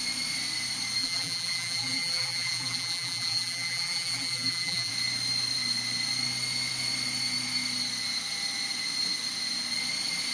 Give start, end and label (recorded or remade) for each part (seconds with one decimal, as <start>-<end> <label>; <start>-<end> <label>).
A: 0.0-1.0 recorded; 1.0-4.9 remade; 4.9-10.3 recorded